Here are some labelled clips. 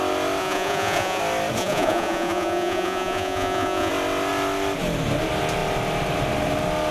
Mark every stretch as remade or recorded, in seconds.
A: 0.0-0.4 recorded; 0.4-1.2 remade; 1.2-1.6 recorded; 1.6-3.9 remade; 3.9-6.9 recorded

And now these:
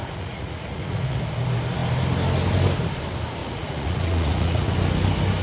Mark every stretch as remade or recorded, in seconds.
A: 0.0-1.2 remade; 1.2-3.4 recorded; 3.4-4.7 remade; 4.7-5.4 recorded

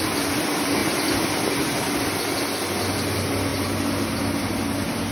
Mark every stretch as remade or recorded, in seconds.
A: 0.0-5.1 recorded

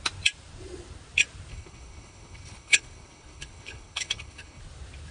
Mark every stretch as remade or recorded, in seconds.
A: 0.0-1.5 recorded; 1.5-4.6 remade; 4.6-5.1 recorded